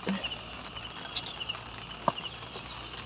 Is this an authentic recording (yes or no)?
yes